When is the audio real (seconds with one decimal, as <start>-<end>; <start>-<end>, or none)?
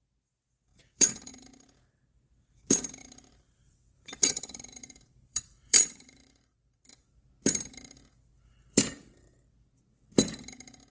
0.0-0.7; 1.3-3.0; 6.9-10.9